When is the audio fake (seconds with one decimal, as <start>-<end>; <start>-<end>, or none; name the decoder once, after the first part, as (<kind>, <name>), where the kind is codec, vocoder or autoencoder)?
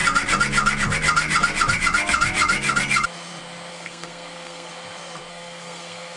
3.7-4.7 (codec, SNAC); 5.3-6.2